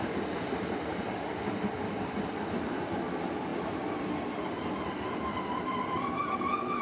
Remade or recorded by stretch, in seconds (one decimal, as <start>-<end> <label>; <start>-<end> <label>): 0.0-6.8 recorded